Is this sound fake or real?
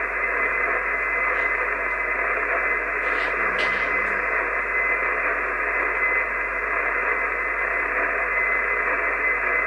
real